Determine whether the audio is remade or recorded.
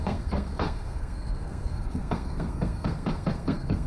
remade